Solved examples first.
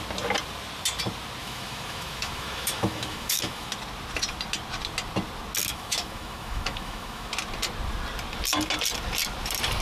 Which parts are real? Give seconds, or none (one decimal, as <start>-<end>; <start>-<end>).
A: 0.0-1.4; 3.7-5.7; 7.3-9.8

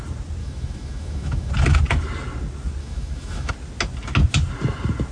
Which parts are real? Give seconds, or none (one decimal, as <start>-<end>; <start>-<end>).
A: 0.0-0.4; 1.5-2.8; 3.5-5.1

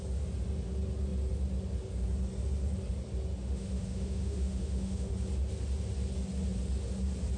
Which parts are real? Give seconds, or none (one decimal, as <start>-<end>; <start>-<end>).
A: 0.0-3.4; 5.1-7.4

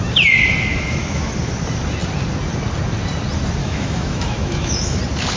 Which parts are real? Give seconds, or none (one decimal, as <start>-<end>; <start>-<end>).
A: 0.0-0.7; 1.3-3.6; 5.0-5.4

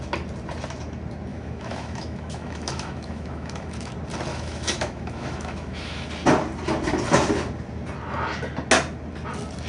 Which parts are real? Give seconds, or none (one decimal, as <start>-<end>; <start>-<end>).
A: 0.0-1.3; 3.9-4.3; 6.1-9.7

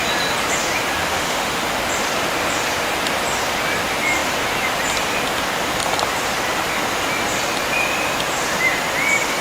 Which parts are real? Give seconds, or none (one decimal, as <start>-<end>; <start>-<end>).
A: 0.0-1.0; 1.6-9.4

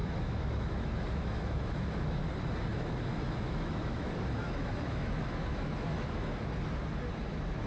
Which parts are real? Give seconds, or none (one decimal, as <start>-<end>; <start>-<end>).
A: 2.2-2.7; 6.5-7.7

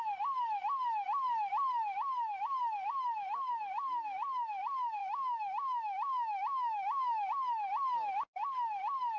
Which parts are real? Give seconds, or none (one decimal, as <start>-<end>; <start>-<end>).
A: 0.0-5.0; 7.3-9.2